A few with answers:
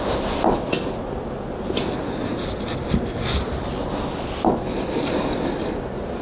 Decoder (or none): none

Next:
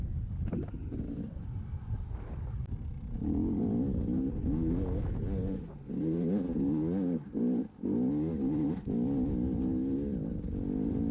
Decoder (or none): none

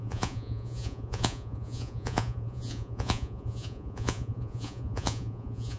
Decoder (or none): vocoder, Vocos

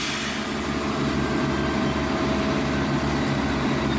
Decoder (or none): none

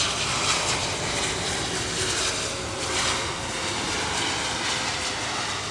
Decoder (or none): none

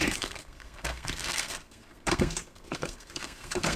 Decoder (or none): codec, SNAC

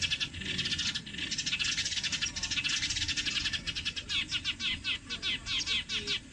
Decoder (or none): none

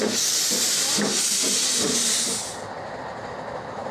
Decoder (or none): none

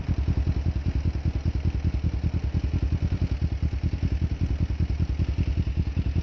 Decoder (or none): none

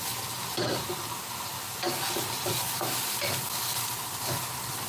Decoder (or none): none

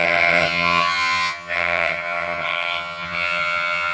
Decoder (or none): vocoder, HiFi-GAN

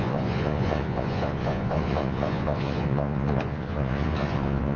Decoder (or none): vocoder, Vocos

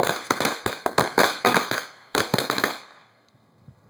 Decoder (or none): codec, SNAC